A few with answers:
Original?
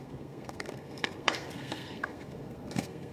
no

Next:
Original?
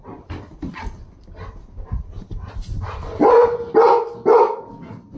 yes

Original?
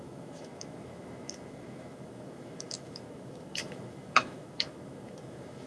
no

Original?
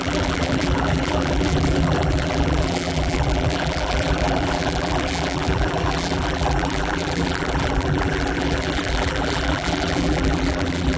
no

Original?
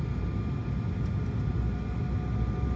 yes